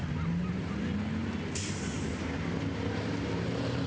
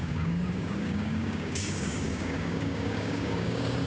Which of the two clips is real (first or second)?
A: first